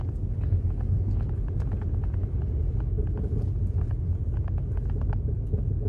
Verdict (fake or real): real